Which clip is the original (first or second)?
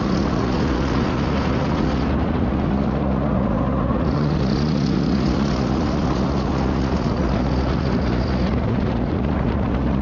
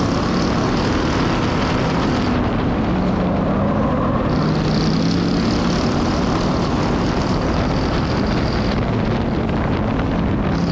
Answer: second